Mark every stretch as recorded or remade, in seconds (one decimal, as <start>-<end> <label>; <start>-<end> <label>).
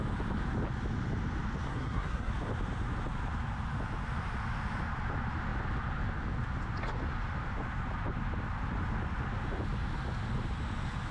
0.0-1.7 recorded; 1.7-2.3 remade; 2.3-11.1 recorded